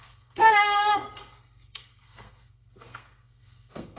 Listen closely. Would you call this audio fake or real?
fake